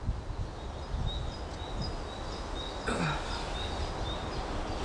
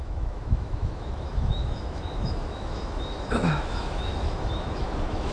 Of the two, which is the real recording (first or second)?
first